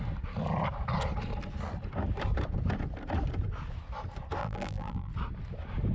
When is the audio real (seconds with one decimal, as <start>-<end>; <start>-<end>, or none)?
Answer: 0.0-4.4; 5.1-5.9